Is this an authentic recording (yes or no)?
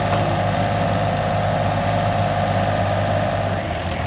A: yes